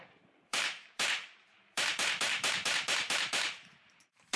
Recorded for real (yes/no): no